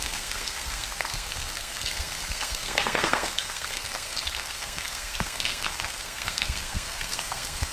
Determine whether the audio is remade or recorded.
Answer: remade